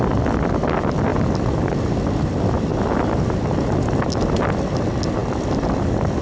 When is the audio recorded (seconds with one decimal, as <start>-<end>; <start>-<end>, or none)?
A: 0.0-6.2